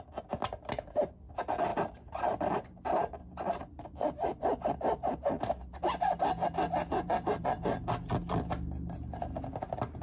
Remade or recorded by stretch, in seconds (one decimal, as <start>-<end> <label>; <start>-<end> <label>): 0.0-10.0 recorded